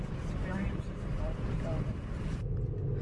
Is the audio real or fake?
real